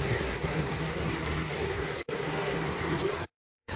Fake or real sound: fake